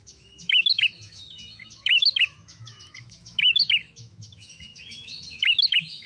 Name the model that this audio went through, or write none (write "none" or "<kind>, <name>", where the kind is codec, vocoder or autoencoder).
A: autoencoder, DAC-VAE